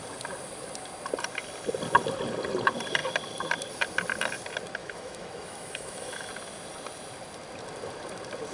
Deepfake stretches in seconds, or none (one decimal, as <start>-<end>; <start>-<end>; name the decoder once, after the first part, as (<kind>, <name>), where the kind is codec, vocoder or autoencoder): 4.8-6.3 (autoencoder, DAC-VAE)